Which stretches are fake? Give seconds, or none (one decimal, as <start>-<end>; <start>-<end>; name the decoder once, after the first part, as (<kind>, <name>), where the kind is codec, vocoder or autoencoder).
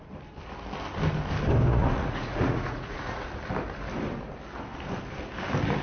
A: 1.7-3.3 (vocoder, Vocos)